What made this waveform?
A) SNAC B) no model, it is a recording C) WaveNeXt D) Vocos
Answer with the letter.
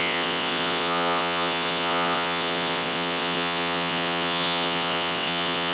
C